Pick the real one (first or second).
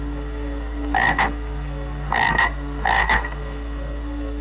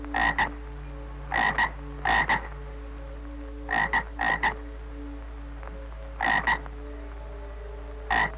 second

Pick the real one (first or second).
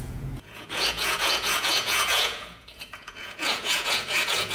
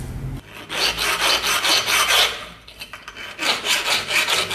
second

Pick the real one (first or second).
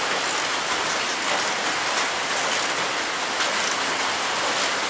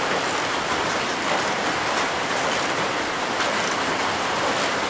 first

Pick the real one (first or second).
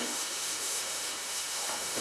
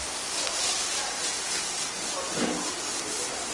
second